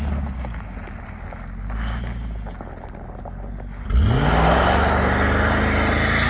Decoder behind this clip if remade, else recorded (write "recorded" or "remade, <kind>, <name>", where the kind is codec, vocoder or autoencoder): recorded